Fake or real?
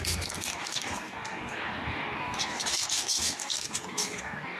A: fake